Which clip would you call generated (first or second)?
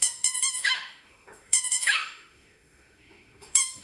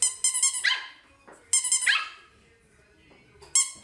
first